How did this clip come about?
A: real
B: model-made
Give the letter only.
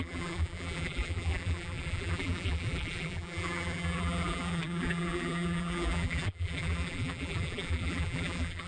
B